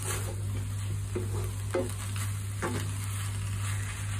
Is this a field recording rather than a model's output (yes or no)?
yes